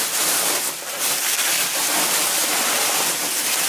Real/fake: real